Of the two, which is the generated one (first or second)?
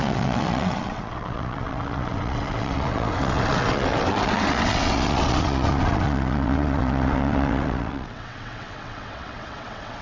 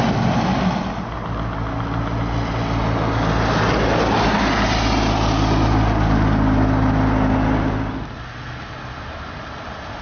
first